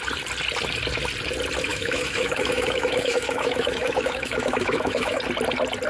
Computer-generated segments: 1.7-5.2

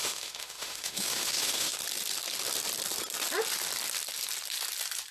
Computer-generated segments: 0.0-1.8

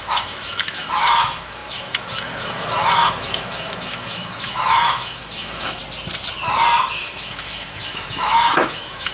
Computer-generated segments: 0.0-5.8; 6.9-9.1

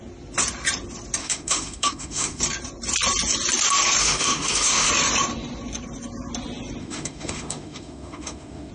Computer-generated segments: 1.2-2.4; 4.0-4.9; 6.8-8.7

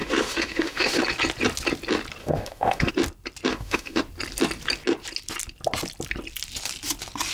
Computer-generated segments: 0.0-1.0; 2.2-2.9; 3.5-4.0